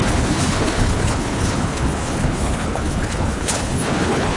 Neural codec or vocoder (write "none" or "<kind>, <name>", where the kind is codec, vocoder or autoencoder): codec, HILCodec